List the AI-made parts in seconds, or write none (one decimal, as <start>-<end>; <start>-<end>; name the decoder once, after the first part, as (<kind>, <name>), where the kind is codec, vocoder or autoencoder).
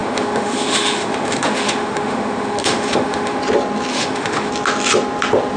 0.0-3.4 (autoencoder, DAC-VAE); 3.9-4.5